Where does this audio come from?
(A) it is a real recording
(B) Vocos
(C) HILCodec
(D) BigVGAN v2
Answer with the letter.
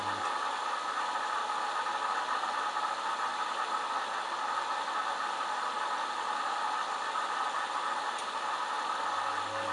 A